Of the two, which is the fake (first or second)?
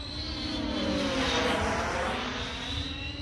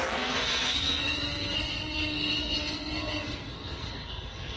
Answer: second